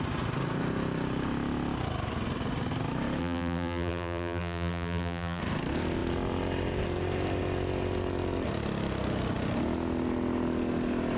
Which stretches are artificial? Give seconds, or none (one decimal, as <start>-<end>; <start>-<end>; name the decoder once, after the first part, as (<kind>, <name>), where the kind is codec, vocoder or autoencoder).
3.2-5.4 (vocoder, BigVGAN v2)